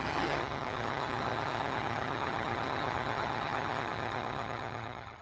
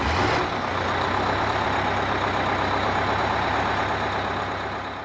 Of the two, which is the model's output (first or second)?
first